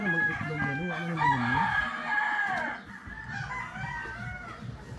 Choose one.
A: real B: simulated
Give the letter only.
A